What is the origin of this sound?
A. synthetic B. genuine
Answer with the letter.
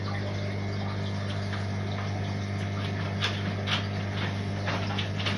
B